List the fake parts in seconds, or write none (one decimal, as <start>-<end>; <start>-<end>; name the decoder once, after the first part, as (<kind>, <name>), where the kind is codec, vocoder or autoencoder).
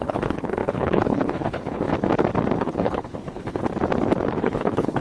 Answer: 0.0-1.9 (codec, HILCodec); 2.6-3.6; 4.4-5.0